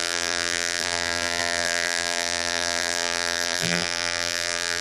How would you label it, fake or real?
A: fake